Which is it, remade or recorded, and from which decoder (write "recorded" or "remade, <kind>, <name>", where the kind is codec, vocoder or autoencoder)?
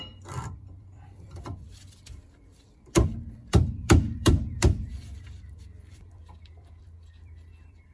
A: remade, vocoder, BigVGAN v2